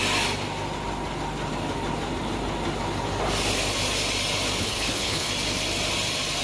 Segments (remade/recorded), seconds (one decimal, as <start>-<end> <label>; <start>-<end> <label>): 0.0-4.6 recorded; 4.6-5.3 remade; 5.3-6.4 recorded